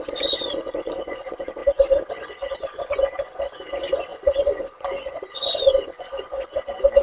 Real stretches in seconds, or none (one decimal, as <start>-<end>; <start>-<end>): none